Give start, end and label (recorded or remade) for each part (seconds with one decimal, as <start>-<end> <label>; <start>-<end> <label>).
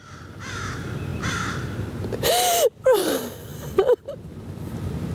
0.0-5.1 recorded